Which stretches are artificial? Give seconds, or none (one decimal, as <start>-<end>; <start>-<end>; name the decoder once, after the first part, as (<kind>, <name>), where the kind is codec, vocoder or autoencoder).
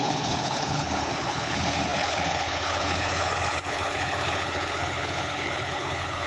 0.0-6.3 (codec, HILCodec)